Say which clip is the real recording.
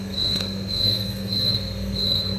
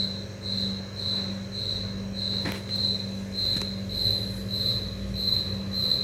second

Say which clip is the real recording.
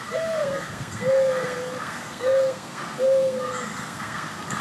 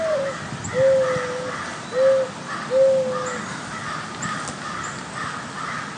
second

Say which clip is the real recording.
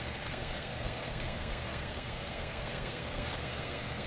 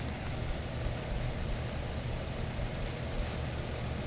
second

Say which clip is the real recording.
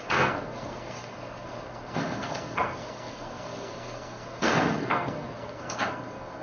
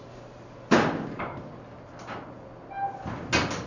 second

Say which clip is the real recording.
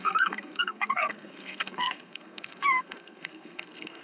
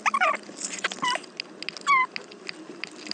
second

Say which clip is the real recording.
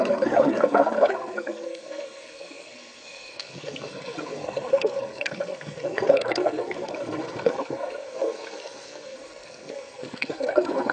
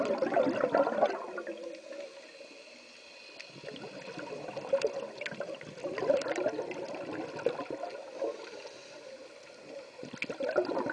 second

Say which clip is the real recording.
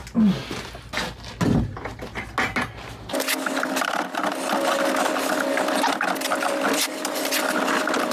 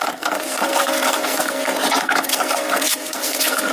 first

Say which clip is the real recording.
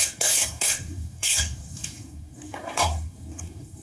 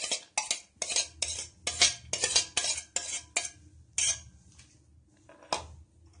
second